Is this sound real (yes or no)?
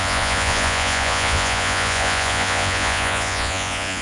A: no